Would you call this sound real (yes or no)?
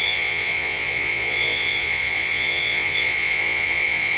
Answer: no